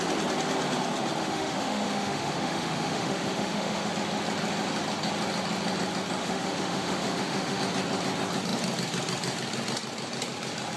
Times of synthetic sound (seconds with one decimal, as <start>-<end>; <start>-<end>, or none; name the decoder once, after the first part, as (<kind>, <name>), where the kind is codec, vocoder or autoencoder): 1.2-3.9 (autoencoder, DAC-VAE); 6.2-7.6